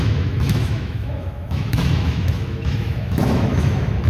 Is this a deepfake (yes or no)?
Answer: yes